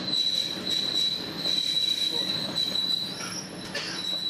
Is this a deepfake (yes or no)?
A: no